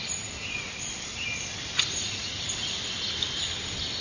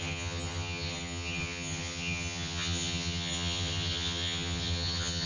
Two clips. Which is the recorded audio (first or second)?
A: first